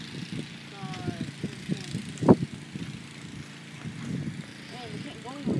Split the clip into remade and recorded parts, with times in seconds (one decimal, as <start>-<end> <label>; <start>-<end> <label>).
0.0-1.7 recorded; 1.7-4.1 remade; 4.1-5.6 recorded